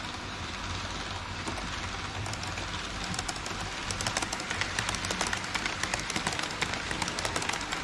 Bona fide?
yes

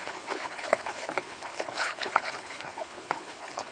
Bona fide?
no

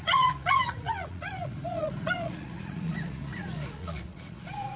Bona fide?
no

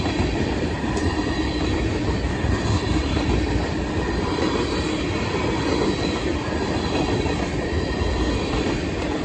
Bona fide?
no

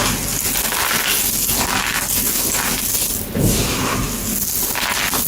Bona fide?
yes